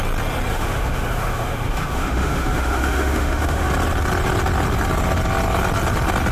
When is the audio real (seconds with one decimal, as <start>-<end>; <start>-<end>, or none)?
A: 0.0-0.5; 3.7-6.3